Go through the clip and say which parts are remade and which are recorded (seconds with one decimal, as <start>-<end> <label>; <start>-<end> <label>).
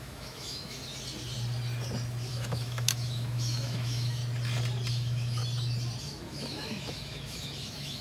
0.0-0.8 remade; 0.8-2.3 recorded; 2.3-4.2 remade; 4.2-4.9 recorded; 4.9-5.4 remade; 5.4-6.0 recorded; 6.0-8.0 remade